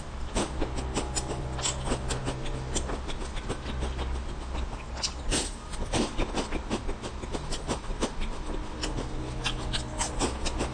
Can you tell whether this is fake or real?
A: real